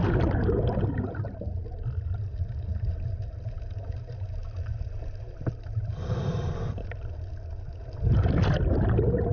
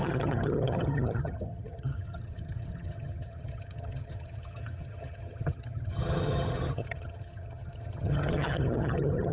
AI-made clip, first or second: second